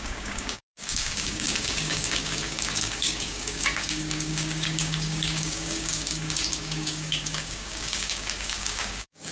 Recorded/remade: remade